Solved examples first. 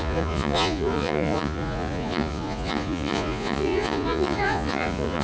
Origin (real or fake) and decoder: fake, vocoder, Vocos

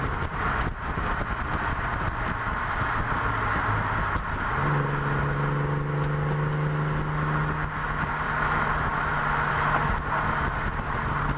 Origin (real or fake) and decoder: real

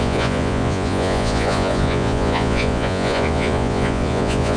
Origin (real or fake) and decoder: fake, vocoder, Vocos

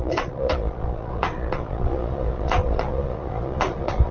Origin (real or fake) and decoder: fake, vocoder, Vocos